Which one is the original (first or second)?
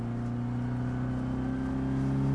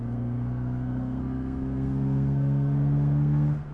first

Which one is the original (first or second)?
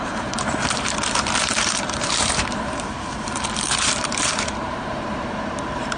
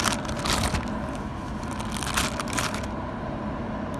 second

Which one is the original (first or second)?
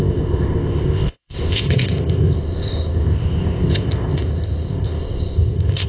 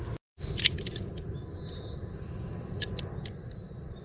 second